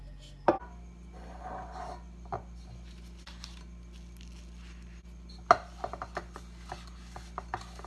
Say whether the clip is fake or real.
real